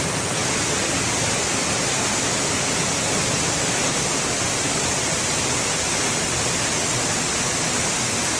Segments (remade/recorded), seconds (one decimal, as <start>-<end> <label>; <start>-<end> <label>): 0.0-8.4 recorded